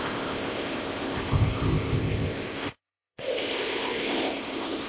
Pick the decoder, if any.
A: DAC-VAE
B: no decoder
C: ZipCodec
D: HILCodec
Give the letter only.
C